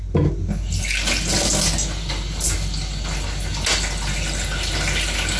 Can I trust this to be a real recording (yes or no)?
yes